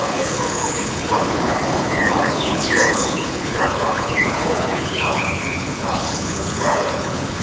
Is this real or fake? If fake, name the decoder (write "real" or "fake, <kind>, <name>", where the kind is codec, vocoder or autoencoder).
fake, codec, HILCodec